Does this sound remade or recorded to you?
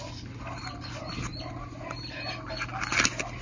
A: recorded